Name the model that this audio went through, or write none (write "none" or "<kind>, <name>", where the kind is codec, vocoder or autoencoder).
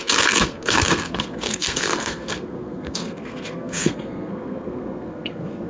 codec, SNAC